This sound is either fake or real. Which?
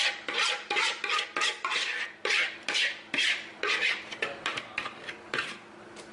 real